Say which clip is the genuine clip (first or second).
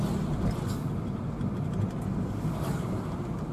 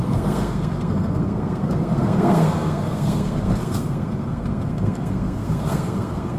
first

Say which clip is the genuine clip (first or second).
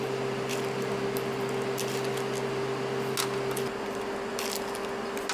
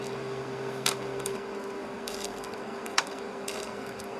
first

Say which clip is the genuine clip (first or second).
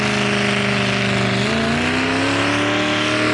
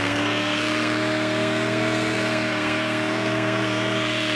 first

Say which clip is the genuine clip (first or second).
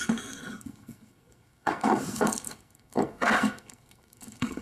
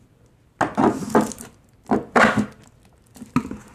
second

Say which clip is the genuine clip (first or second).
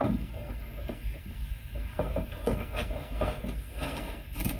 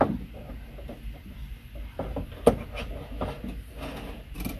second